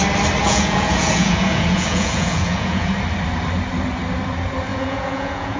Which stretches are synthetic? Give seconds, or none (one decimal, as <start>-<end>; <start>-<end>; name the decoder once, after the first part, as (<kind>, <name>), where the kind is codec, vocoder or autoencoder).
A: 0.4-2.9 (vocoder, Vocos); 4.7-5.6